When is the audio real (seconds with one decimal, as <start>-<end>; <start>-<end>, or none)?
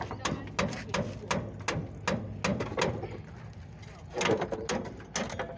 0.0-5.6